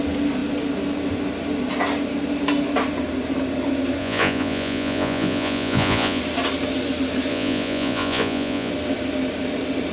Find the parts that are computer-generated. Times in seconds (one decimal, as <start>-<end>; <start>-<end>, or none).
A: 4.0-6.2; 7.3-8.7